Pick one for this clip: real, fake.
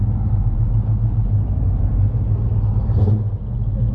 real